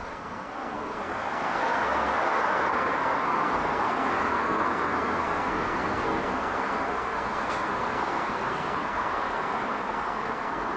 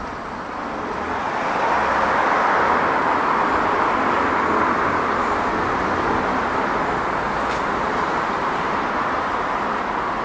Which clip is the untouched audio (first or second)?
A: second